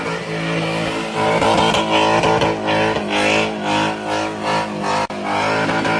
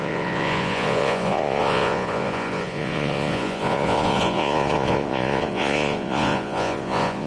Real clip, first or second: first